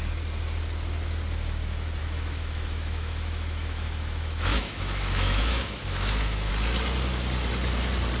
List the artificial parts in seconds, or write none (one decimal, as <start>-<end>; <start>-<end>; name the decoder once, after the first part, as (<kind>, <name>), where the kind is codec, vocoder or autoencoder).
2.0-6.5 (autoencoder, DAC-VAE)